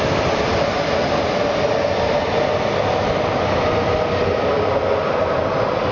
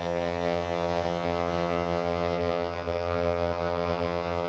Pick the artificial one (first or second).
second